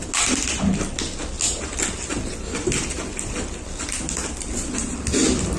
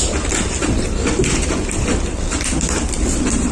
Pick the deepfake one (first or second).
second